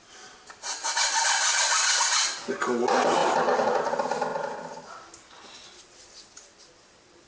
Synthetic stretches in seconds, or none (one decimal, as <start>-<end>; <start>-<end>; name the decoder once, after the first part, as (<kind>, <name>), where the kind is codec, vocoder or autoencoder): none